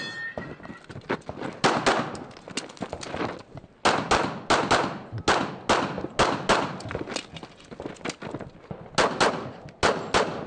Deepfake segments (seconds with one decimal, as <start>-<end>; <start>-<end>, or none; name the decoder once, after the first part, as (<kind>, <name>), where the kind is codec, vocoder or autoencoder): 0.9-1.5 (vocoder, BigVGAN v2)